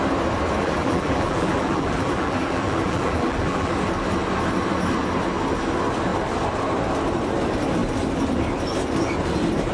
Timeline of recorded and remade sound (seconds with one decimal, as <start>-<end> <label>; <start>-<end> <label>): 0.0-0.6 recorded; 0.6-3.7 remade; 3.7-9.7 recorded